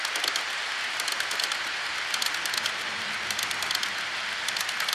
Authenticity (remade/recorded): recorded